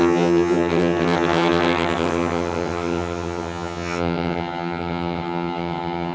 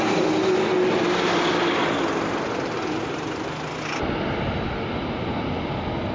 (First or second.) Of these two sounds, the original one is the second